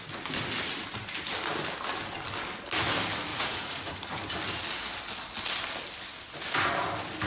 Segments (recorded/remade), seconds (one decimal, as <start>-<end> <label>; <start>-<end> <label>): 0.0-3.3 recorded; 3.3-4.3 remade; 4.3-7.3 recorded